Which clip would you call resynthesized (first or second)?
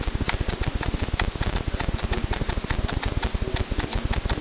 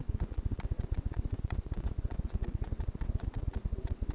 second